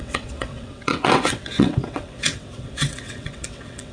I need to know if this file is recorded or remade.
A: remade